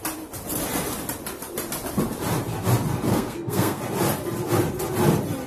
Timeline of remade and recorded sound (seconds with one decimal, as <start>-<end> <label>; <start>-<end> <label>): 0.0-3.1 recorded; 3.1-3.8 remade; 3.8-5.5 recorded